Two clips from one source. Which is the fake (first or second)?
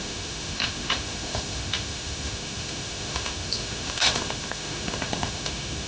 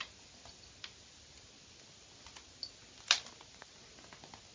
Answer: first